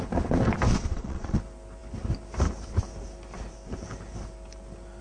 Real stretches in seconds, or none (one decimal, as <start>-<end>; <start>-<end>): 0.0-0.7; 1.4-5.0